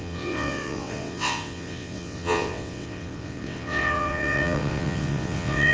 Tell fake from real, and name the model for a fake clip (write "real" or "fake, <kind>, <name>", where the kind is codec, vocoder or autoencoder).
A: fake, vocoder, WaveNeXt